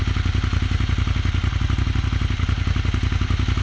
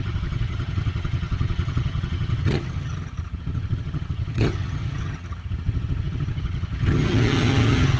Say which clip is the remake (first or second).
second